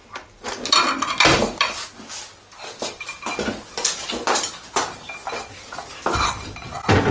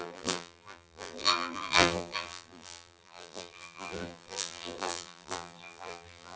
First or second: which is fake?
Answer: second